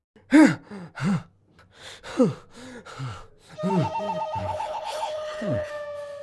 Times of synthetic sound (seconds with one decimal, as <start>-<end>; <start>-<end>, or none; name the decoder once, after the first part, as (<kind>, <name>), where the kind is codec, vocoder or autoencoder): 4.4-5.7 (codec, HILCodec)